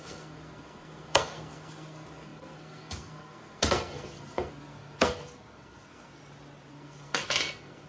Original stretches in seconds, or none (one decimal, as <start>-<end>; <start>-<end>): 6.2-6.7